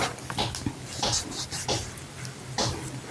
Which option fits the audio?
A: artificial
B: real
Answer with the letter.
B